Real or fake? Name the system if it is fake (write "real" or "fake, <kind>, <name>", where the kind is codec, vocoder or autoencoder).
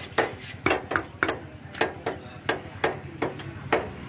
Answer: real